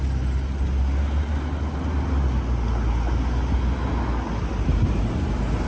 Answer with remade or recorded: recorded